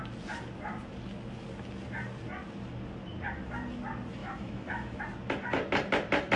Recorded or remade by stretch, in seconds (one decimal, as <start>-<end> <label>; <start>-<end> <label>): 0.0-4.2 recorded; 4.2-5.0 remade; 5.0-6.4 recorded